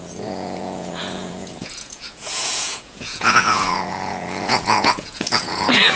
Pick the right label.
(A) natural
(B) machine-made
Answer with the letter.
B